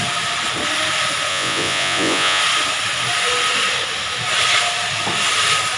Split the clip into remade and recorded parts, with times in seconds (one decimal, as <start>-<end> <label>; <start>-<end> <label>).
0.0-1.3 recorded; 1.3-2.4 remade; 2.4-5.8 recorded